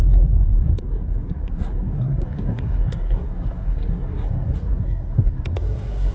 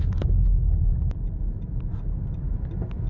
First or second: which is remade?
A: first